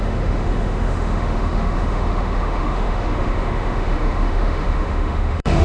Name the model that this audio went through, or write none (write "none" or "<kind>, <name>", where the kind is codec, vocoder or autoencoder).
autoencoder, DAC-VAE